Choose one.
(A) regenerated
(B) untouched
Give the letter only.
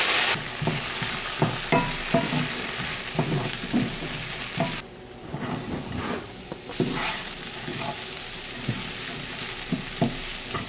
B